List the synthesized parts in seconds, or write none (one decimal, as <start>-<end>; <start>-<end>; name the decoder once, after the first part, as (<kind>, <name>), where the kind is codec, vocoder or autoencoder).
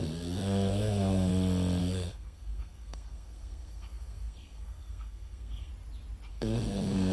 0.0-1.3 (codec, SNAC); 1.8-5.7; 6.3-7.1